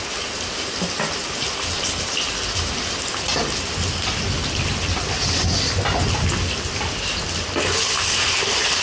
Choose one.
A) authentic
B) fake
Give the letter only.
A